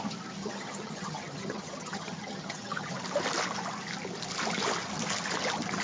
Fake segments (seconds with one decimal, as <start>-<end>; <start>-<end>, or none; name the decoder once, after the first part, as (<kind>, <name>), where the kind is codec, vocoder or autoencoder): 0.4-2.9 (vocoder, HiFi-GAN)